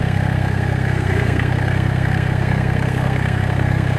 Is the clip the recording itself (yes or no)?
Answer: no